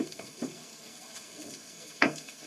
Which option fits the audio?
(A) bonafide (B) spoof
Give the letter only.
B